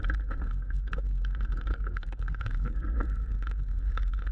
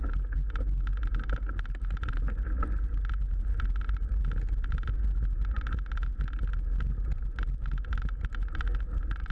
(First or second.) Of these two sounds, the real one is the second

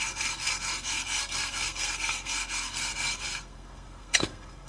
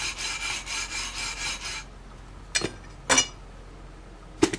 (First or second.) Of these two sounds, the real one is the second